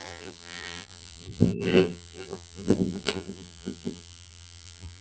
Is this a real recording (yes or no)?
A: no